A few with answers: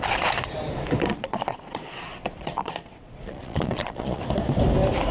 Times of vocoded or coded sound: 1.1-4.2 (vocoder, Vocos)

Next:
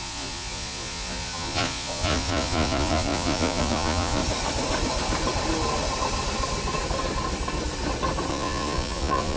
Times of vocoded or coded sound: 0.0-4.2 (vocoder, Vocos); 8.3-9.4